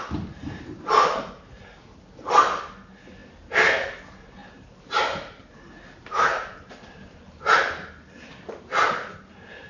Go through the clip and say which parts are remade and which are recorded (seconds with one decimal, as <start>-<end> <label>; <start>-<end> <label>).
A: 0.0-9.7 recorded

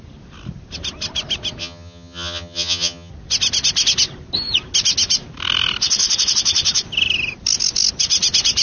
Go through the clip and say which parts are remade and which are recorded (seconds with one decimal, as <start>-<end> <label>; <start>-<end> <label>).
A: 0.0-1.6 recorded; 1.6-3.1 remade; 3.1-8.6 recorded

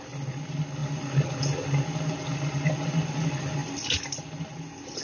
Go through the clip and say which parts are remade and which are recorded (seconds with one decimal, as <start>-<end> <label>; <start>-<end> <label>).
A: 0.0-5.0 recorded